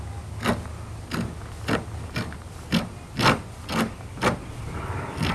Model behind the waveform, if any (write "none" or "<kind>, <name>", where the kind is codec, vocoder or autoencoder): none